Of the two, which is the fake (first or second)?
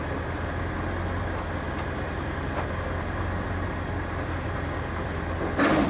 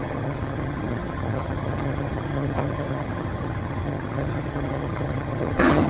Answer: second